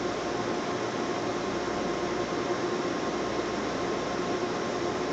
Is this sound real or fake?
real